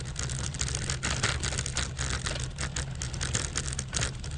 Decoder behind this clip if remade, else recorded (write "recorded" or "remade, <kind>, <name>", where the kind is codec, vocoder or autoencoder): recorded